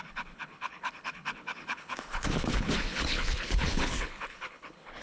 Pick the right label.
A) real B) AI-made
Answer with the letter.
B